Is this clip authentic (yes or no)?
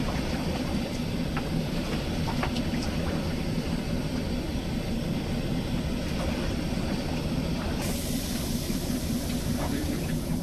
no